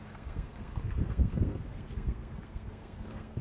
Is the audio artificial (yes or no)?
yes